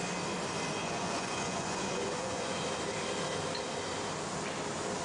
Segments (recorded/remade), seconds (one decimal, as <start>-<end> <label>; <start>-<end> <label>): 0.0-0.8 recorded; 0.8-2.6 remade; 2.6-5.0 recorded